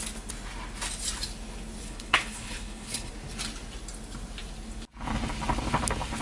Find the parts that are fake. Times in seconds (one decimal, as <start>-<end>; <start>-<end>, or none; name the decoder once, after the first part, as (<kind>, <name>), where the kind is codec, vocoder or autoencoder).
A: 1.8-3.1 (codec, HILCodec)